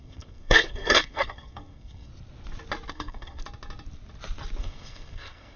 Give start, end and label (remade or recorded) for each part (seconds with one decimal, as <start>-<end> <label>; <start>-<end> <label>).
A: 0.0-2.1 remade; 2.1-2.9 recorded; 2.9-3.4 remade; 3.4-4.6 recorded; 4.6-5.6 remade